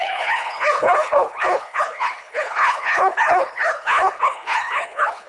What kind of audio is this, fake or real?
fake